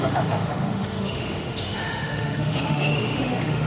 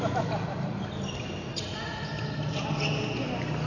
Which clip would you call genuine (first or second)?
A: second